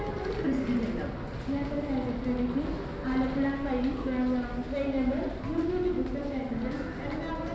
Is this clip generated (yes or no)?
no